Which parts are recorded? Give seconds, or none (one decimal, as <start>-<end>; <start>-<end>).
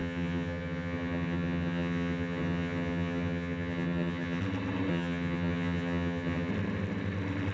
4.4-4.9; 6.5-7.5